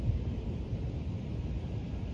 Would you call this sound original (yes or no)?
yes